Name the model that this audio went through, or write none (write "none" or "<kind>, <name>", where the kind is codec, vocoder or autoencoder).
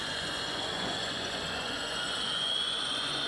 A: vocoder, Vocos